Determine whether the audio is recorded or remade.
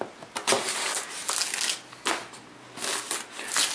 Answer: recorded